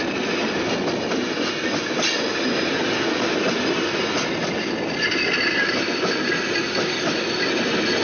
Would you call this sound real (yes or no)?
yes